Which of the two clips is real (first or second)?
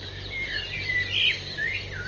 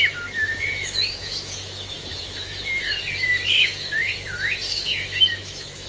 first